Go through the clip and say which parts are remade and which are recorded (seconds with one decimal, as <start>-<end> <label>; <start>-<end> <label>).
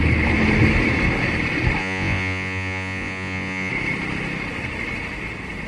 0.0-1.8 recorded; 1.8-3.7 remade; 3.7-5.7 recorded